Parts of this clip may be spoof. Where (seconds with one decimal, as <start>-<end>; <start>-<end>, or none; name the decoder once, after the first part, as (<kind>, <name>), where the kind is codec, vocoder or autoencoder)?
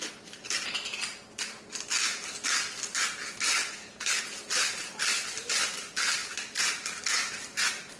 3.6-4.2 (codec, HILCodec)